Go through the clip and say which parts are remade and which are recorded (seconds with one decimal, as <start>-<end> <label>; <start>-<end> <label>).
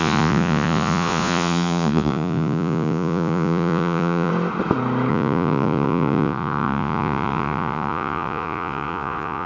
0.0-4.3 remade; 4.3-5.1 recorded; 5.1-9.5 remade